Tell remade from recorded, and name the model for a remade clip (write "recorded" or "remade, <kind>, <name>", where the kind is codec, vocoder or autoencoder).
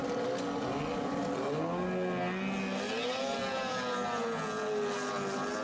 recorded